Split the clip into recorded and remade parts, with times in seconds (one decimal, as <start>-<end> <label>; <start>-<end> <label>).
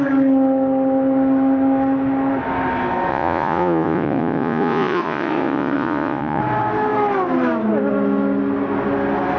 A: 0.0-3.1 recorded; 3.1-6.4 remade; 6.4-9.4 recorded